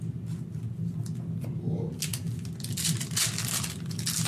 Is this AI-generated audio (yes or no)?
no